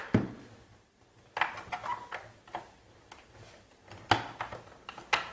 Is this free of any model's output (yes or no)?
yes